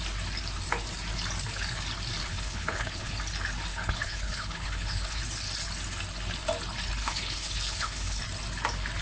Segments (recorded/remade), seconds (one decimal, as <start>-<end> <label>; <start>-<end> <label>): 0.0-2.3 recorded; 2.3-3.2 remade; 3.2-3.7 recorded; 3.7-5.2 remade; 5.2-7.0 recorded; 7.0-8.2 remade; 8.2-9.0 recorded